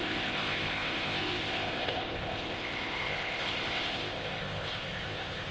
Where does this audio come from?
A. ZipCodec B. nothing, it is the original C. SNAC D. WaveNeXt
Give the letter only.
A